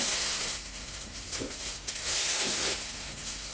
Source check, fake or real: fake